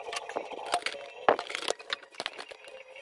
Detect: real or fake real